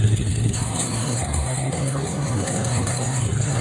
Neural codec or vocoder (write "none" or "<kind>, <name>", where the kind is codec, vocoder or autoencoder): codec, SNAC